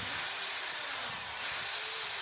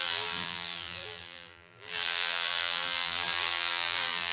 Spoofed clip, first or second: second